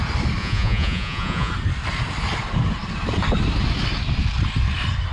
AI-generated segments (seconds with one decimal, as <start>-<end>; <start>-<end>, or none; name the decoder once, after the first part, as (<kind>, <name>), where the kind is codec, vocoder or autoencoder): 0.4-1.5 (vocoder, Vocos)